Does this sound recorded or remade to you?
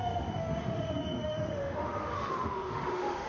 remade